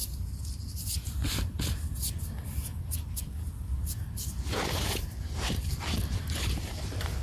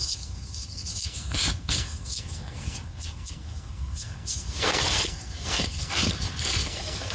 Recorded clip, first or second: first